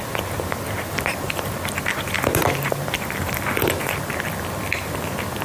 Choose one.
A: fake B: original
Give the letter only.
B